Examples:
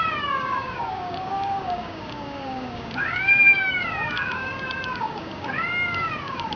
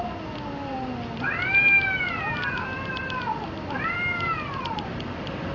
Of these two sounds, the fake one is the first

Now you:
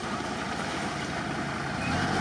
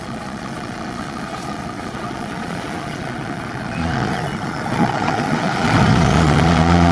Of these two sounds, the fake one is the second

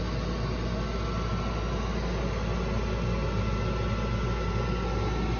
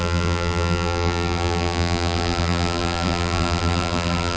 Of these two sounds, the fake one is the second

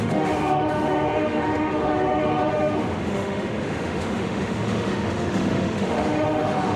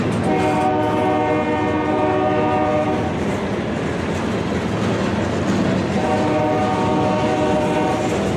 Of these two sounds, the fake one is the first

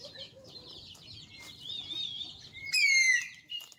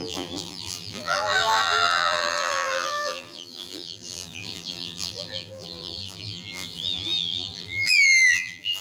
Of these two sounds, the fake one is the second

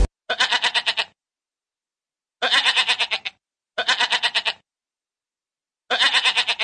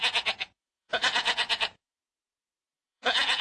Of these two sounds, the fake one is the second